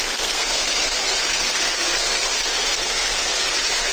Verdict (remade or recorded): remade